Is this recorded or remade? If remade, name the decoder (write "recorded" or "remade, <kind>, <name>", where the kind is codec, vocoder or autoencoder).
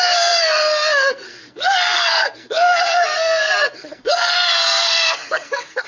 remade, codec, SNAC